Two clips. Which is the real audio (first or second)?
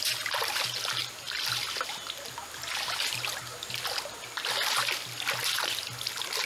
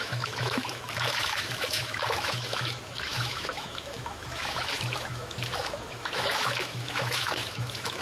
first